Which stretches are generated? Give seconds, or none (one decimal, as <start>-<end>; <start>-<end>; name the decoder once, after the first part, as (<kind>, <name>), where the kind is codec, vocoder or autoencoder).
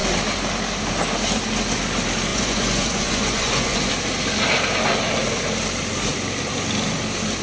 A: 2.3-3.9 (vocoder, Vocos)